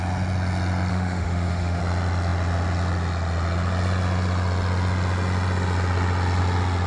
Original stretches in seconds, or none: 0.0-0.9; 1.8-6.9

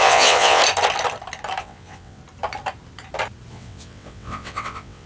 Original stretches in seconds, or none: 0.6-1.6; 2.2-3.5

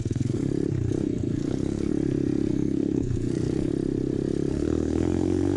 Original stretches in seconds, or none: 0.5-1.0; 1.9-2.5; 3.7-4.5

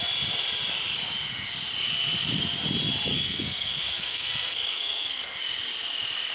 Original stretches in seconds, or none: 0.0-3.1; 5.4-6.3

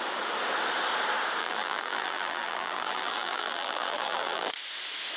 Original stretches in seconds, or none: 0.0-1.4; 4.5-5.2

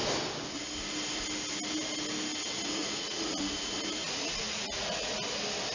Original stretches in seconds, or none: 0.0-2.8; 3.4-4.0; 5.1-5.7

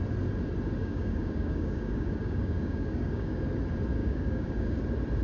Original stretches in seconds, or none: 0.0-0.8; 3.5-4.0; 4.8-5.2

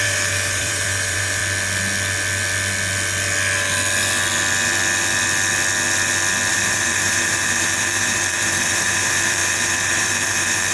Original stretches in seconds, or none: 1.4-6.5